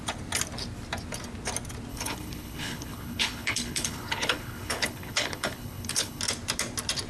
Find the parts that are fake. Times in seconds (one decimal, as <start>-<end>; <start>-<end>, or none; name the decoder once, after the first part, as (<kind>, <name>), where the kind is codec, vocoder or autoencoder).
1.9-6.2 (codec, HILCodec)